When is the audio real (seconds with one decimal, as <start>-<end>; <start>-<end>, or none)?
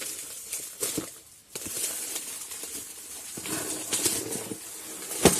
0.0-1.4; 4.6-5.4